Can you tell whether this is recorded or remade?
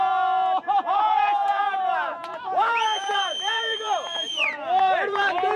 remade